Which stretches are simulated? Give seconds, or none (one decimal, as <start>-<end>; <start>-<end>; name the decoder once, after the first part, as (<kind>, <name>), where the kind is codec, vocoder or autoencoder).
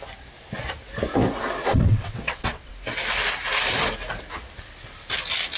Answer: 1.7-2.7 (vocoder, WaveNeXt)